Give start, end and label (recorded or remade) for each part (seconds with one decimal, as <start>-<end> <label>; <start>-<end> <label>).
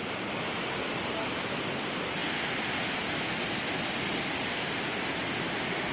0.0-5.9 recorded